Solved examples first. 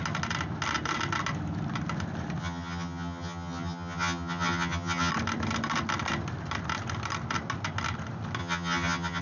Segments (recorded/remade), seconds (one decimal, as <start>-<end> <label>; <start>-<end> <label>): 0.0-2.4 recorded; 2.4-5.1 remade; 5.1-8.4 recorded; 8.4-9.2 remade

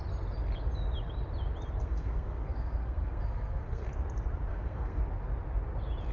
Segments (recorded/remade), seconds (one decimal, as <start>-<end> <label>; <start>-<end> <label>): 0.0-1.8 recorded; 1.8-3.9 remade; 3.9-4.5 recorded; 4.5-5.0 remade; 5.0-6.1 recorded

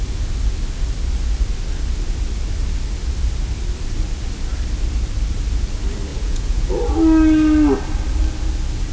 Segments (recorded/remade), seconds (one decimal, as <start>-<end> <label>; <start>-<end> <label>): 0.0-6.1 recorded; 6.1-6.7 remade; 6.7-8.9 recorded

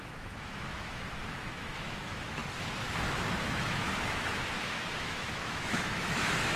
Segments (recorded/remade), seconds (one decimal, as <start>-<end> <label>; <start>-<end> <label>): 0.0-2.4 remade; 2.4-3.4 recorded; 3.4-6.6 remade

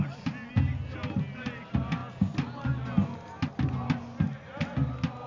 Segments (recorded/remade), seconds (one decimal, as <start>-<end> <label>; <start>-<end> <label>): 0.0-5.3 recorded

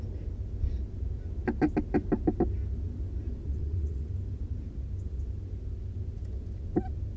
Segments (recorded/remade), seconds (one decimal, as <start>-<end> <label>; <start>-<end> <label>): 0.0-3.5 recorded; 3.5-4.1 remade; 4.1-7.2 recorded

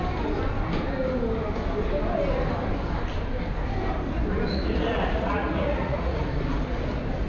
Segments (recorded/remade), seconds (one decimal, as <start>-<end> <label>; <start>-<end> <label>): 0.0-4.5 recorded; 4.5-6.3 remade; 6.3-7.3 recorded

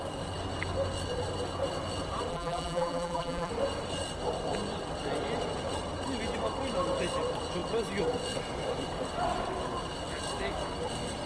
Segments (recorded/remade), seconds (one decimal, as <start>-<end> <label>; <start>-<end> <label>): 0.0-2.3 recorded; 2.3-3.5 remade; 3.5-11.3 recorded